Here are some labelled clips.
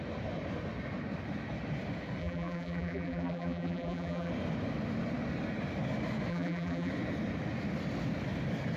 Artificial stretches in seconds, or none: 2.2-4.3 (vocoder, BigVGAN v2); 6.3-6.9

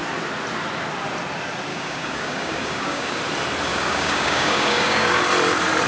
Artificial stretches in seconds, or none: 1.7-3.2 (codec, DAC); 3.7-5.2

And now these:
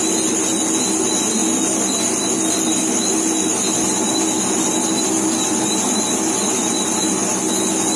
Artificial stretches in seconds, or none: none

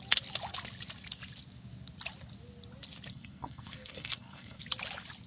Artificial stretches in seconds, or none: 3.1-4.6 (codec, SNAC)